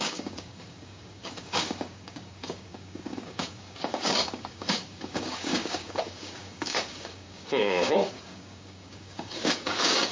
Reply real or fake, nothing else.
fake